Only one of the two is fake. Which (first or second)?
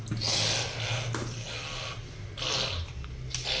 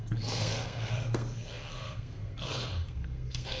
second